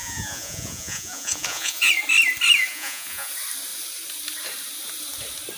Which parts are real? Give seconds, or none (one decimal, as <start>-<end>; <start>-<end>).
1.9-2.7; 3.3-5.6